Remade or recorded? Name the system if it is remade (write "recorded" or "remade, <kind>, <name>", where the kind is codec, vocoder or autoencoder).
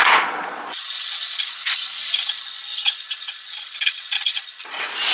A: remade, vocoder, Vocos